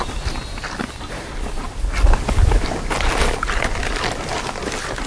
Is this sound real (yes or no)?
yes